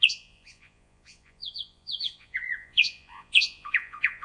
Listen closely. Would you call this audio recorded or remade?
remade